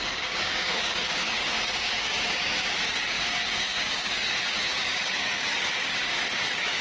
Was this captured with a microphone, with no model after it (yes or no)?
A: no